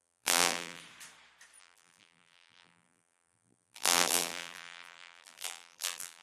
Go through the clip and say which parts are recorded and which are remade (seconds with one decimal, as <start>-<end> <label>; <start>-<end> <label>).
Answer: 0.0-0.8 remade; 0.8-1.6 recorded; 1.6-6.2 remade

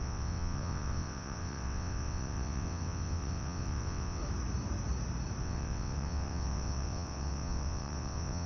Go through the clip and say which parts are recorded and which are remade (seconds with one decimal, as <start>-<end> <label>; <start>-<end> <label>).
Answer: 0.0-4.2 remade; 4.2-5.4 recorded; 5.4-8.5 remade

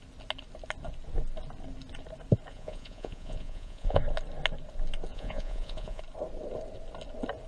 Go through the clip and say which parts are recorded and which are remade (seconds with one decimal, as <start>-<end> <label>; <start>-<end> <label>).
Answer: 0.0-2.5 recorded; 2.5-4.0 remade; 4.0-5.1 recorded; 5.1-6.0 remade; 6.0-7.5 recorded